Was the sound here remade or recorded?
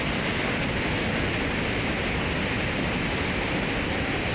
recorded